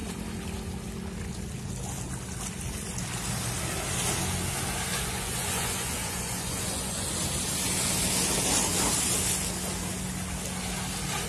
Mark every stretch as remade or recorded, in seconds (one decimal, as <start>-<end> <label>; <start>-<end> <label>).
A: 0.0-4.9 recorded; 4.9-7.1 remade; 7.1-11.3 recorded